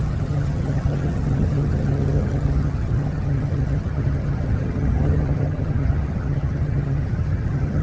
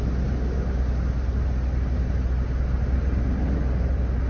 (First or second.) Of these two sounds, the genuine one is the second